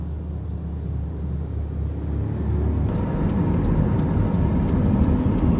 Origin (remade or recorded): recorded